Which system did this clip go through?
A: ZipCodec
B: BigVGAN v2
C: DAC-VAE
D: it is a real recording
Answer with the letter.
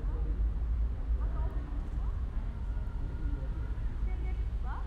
D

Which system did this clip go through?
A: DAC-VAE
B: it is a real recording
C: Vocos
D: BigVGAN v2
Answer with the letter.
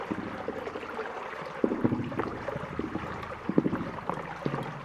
D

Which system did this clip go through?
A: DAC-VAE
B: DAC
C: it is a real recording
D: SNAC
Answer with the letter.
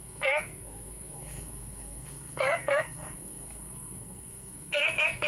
D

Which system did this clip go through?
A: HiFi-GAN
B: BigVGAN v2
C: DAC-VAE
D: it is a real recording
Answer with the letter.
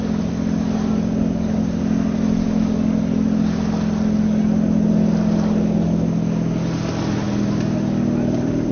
D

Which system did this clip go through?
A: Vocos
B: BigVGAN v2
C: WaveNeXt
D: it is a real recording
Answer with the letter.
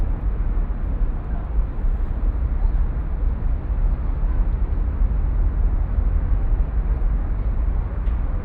D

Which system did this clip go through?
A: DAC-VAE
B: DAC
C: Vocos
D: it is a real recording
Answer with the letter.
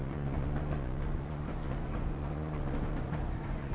C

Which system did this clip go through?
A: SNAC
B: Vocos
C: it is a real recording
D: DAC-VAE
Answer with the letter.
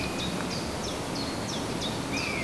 C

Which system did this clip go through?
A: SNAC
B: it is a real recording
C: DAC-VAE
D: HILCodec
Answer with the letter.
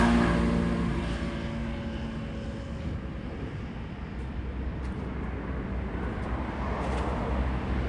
B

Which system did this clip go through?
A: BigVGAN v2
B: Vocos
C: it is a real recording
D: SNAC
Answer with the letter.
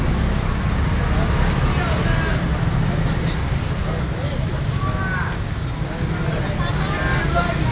C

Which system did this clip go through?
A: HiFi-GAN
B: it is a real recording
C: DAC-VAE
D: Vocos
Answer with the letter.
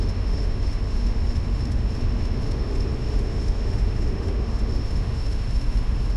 C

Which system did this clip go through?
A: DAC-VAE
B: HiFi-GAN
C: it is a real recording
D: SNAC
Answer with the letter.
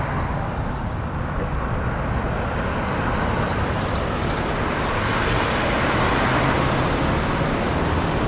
C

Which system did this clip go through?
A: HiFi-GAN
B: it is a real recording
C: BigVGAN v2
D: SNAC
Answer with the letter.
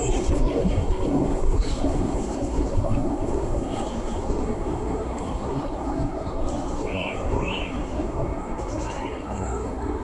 D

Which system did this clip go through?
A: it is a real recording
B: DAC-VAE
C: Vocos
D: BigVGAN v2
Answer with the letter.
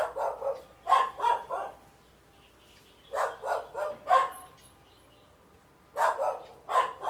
A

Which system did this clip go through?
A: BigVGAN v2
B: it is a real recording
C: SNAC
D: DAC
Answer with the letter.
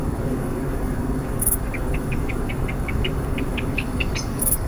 D